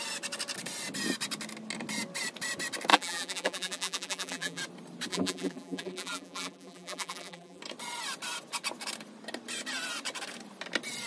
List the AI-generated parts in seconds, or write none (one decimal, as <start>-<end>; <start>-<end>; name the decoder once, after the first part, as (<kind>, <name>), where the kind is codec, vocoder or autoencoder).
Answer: 2.9-4.6 (vocoder, BigVGAN v2); 5.1-7.6